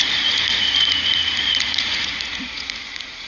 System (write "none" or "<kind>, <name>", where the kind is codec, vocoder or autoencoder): vocoder, Vocos